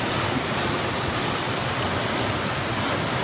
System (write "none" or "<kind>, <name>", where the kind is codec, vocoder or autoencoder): none